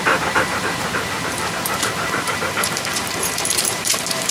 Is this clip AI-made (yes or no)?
yes